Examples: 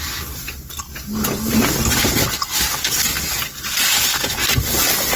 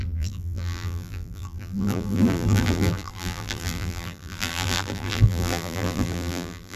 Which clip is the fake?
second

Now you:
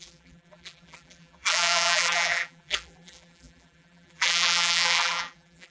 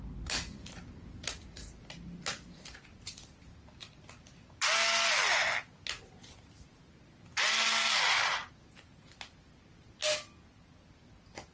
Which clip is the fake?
first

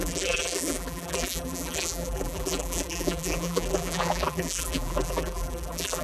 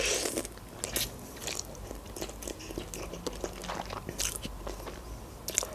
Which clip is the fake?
first